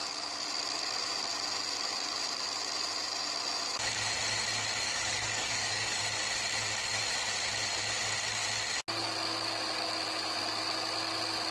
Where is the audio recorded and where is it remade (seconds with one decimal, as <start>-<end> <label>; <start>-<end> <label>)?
0.0-4.8 recorded; 4.8-6.0 remade; 6.0-11.5 recorded

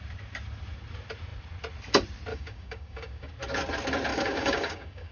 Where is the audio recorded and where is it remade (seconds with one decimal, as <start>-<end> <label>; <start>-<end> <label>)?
0.0-2.3 recorded; 2.3-3.3 remade; 3.3-4.1 recorded; 4.1-5.1 remade